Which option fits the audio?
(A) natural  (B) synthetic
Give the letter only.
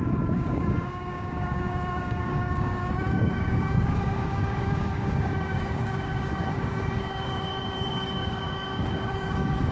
B